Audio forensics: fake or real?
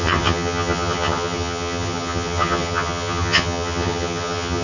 fake